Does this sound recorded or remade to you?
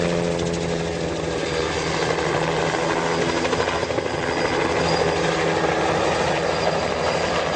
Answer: recorded